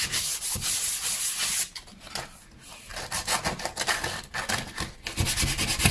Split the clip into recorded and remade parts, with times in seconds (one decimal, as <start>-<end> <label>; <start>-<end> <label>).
0.0-5.9 recorded